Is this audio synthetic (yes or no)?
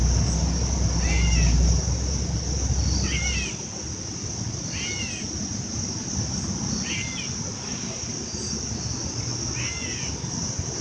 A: no